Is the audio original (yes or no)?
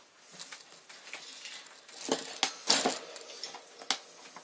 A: yes